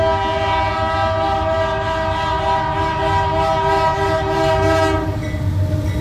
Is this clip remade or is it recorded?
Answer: recorded